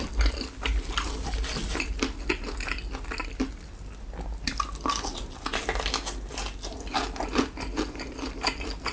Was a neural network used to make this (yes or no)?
no